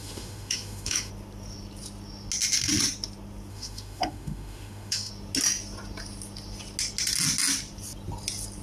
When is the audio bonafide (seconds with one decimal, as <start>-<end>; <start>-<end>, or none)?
1.1-3.5; 5.1-8.6